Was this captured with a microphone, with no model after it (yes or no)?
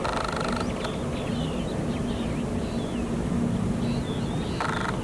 yes